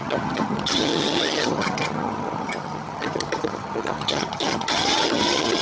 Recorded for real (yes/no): no